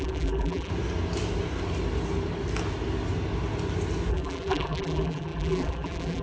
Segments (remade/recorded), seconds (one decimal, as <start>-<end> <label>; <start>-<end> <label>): 0.0-0.7 remade; 0.7-4.1 recorded; 4.1-6.2 remade